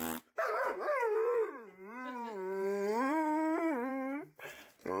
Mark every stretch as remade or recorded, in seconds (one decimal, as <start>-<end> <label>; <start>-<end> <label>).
0.0-0.9 recorded; 0.9-3.9 remade; 3.9-5.0 recorded